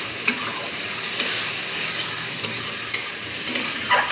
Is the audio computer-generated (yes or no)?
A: yes